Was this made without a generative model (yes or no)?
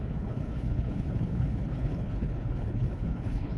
no